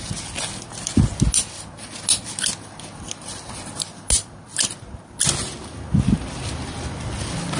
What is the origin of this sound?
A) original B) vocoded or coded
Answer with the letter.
A